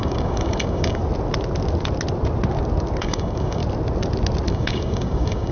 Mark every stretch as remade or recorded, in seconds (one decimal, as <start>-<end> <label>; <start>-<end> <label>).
0.0-1.0 remade; 1.0-3.0 recorded; 3.0-3.6 remade; 3.6-4.5 recorded; 4.5-5.5 remade